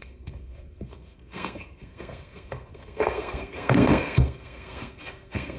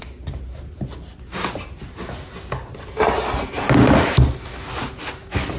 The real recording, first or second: second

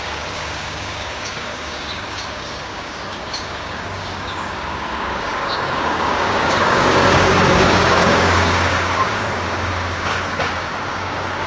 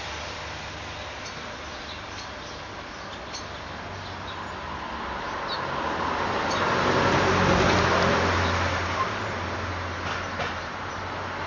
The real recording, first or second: second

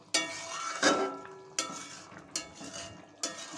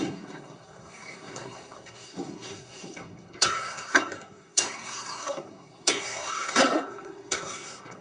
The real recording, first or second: first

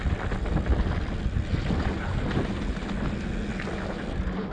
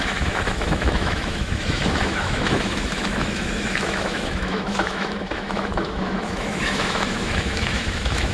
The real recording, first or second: first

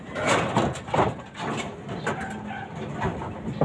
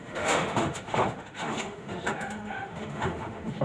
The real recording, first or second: first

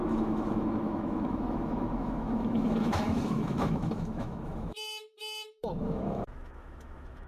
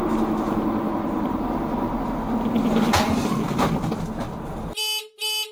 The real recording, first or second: second